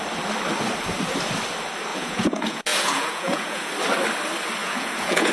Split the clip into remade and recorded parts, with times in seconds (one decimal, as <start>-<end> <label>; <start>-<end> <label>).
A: 0.0-1.9 recorded; 1.9-3.7 remade; 3.7-4.6 recorded; 4.6-5.3 remade